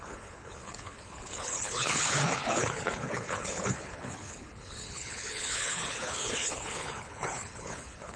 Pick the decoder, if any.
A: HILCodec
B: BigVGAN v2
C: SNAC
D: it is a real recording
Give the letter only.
A